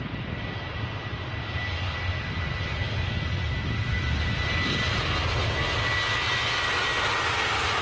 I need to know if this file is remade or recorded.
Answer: recorded